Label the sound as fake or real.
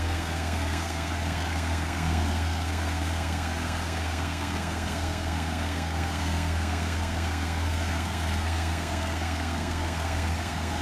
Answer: fake